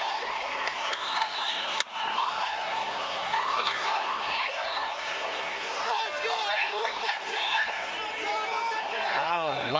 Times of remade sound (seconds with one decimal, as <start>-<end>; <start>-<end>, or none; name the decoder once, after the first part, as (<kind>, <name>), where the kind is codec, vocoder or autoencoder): 0.0-6.0 (codec, SNAC); 6.5-7.9; 8.8-9.8